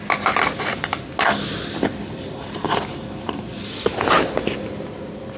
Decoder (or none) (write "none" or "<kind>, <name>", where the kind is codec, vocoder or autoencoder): none